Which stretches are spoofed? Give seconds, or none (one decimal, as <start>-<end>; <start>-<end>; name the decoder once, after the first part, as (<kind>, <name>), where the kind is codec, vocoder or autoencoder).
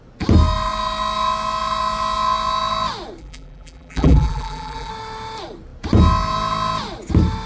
3.2-4.9 (vocoder, BigVGAN v2)